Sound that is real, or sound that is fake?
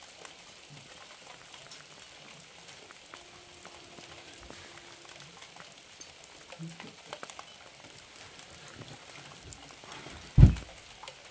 real